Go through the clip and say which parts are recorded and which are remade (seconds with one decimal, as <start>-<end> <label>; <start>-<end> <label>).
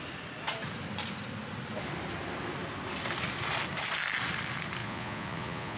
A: 0.0-4.8 recorded; 4.8-5.8 remade